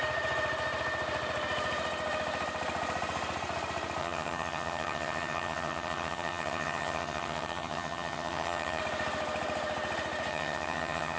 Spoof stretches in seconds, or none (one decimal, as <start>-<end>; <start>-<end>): 4.0-8.8; 10.3-11.2